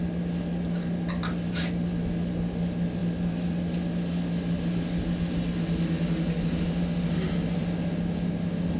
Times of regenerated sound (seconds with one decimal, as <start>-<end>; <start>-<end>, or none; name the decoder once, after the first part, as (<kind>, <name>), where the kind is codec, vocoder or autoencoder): none